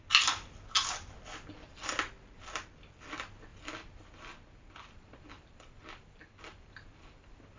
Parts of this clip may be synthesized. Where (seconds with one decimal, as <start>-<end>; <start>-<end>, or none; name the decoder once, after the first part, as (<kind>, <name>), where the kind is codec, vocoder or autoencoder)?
3.5-7.6 (vocoder, BigVGAN v2)